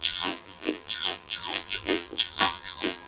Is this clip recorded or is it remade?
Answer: remade